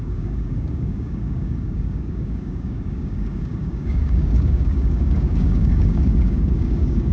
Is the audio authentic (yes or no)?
no